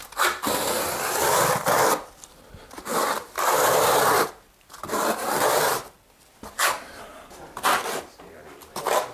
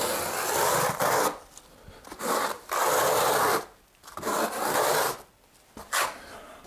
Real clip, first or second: second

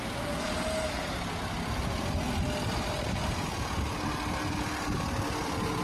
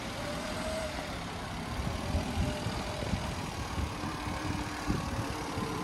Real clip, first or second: first